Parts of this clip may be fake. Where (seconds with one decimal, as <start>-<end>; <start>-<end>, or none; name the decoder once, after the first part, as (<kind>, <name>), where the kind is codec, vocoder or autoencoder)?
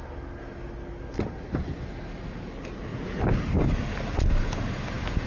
none